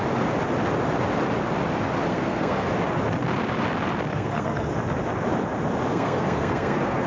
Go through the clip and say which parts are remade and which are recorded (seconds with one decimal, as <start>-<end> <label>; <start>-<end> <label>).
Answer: 0.0-2.1 recorded; 2.1-2.7 remade; 2.7-4.1 recorded; 4.1-4.7 remade; 4.7-5.9 recorded; 5.9-7.1 remade